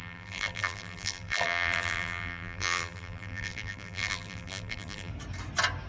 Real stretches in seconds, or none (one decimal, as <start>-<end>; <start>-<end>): 5.1-5.9